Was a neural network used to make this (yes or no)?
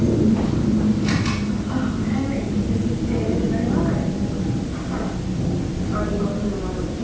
no